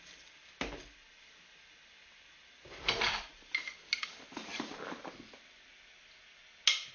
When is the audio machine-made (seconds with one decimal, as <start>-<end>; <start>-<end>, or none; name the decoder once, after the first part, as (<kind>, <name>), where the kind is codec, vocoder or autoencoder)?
none